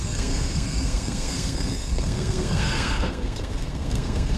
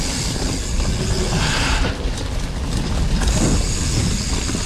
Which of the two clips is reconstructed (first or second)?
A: first